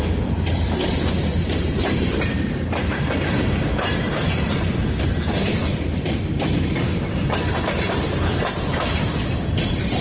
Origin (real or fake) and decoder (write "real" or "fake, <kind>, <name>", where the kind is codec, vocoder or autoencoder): fake, vocoder, BigVGAN v2